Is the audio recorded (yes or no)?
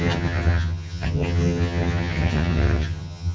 no